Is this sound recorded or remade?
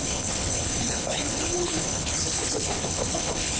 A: remade